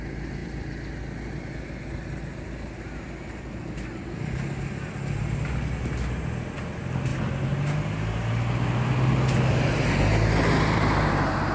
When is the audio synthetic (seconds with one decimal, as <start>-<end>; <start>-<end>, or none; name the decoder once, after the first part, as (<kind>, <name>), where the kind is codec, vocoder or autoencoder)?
0.4-0.9 (vocoder, BigVGAN v2)